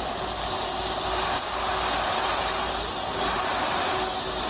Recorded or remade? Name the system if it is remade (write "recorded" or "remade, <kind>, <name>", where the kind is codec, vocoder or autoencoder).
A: recorded